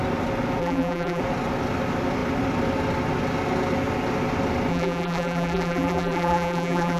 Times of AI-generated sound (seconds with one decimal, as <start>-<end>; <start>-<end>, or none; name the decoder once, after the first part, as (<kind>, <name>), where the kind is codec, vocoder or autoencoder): 0.6-1.2 (vocoder, BigVGAN v2); 4.7-7.0